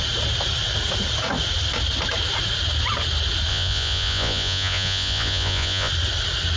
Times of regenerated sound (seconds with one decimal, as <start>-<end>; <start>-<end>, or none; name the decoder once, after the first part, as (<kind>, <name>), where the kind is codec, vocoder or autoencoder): 3.5-5.9 (vocoder, Vocos)